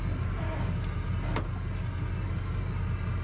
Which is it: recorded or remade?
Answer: recorded